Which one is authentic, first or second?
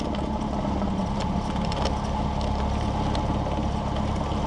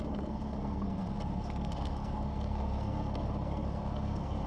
first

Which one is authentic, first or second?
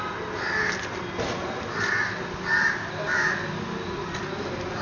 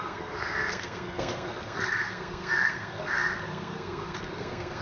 first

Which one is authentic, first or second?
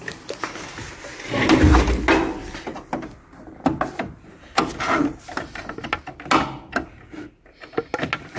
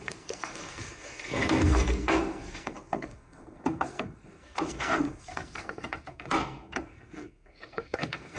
first